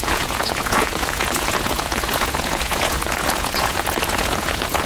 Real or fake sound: fake